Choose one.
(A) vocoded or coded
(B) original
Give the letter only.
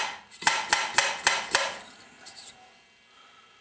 B